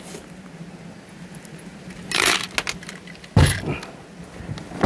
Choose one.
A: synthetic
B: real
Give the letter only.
B